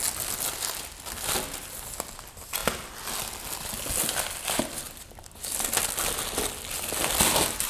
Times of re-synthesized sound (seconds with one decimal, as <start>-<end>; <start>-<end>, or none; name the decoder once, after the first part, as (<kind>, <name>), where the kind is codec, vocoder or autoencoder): none